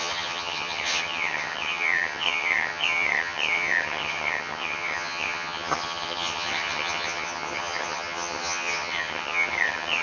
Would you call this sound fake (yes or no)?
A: yes